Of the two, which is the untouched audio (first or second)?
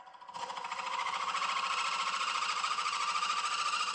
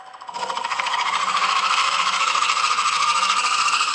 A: first